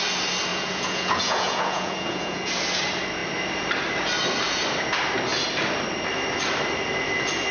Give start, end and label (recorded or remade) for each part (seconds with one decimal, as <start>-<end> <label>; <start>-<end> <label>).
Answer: 0.0-0.5 recorded; 0.5-2.5 remade; 2.5-7.5 recorded